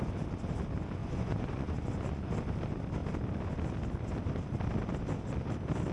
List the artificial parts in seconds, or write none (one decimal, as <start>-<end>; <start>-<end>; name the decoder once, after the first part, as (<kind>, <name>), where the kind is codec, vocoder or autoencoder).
1.0-2.3 (vocoder, Vocos)

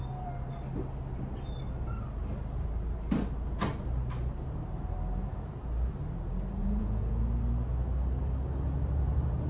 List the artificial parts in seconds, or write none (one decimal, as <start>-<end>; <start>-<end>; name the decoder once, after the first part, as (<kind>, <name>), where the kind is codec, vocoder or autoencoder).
6.6-7.1 (vocoder, Vocos)

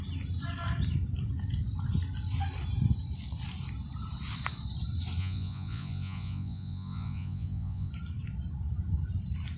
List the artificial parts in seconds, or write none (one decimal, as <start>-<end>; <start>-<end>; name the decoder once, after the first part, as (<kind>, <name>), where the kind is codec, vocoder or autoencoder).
5.2-7.9 (vocoder, Vocos)

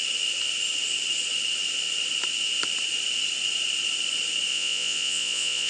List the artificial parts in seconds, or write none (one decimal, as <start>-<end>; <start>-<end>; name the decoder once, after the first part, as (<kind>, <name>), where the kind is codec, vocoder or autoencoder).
4.5-5.7 (vocoder, Vocos)